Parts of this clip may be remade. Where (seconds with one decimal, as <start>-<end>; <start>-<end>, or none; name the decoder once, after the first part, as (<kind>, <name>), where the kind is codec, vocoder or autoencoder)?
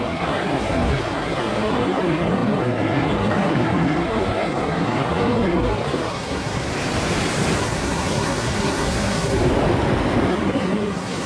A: 0.0-6.7 (codec, SNAC); 7.6-9.4; 10.3-11.3